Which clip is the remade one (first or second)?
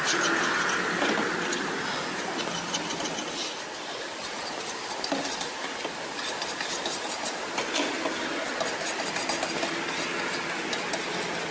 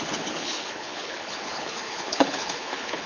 second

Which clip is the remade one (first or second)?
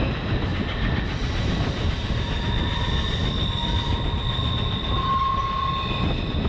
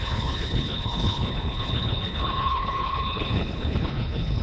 second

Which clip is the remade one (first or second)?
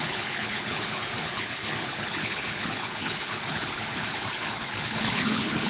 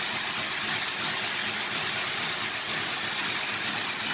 first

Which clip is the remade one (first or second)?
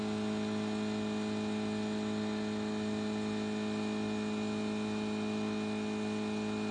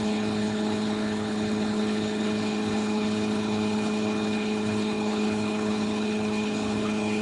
second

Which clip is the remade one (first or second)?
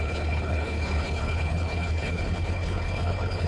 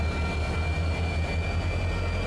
first